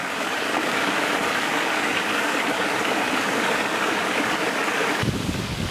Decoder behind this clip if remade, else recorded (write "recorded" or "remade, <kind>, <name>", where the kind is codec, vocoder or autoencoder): remade, codec, DAC